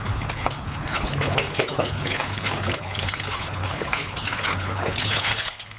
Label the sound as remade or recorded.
remade